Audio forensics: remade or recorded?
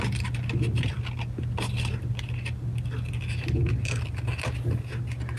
recorded